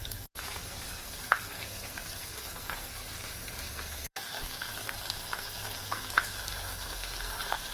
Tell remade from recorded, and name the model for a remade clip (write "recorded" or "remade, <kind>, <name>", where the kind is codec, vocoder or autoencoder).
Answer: remade, codec, SNAC